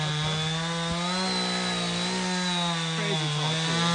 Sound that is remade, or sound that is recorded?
recorded